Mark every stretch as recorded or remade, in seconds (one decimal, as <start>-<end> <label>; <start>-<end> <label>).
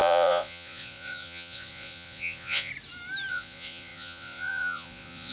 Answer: 0.0-2.7 remade; 2.7-3.3 recorded; 3.3-5.3 remade